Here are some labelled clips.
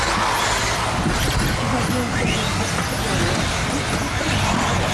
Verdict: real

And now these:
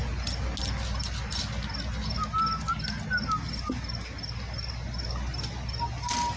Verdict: real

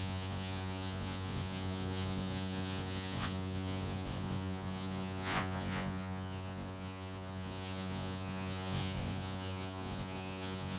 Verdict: fake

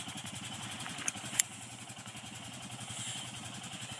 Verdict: fake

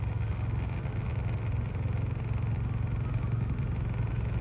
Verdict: real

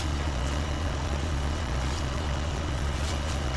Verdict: fake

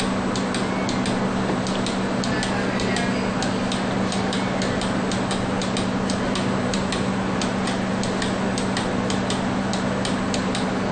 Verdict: real